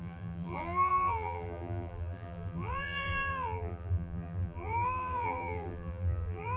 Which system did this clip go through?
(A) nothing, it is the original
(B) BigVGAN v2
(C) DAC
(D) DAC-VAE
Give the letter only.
B